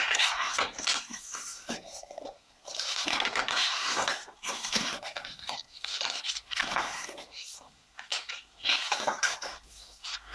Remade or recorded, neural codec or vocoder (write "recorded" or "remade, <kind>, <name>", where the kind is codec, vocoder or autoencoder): remade, codec, SNAC